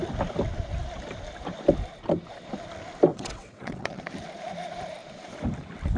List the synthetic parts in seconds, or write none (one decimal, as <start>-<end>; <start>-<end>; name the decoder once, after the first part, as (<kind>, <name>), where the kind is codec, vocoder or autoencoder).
3.1-4.0 (vocoder, WaveNeXt)